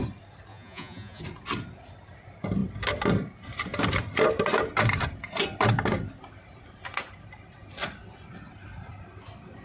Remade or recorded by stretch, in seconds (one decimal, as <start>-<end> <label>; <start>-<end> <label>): 0.0-0.5 recorded; 0.5-1.2 remade; 1.2-9.6 recorded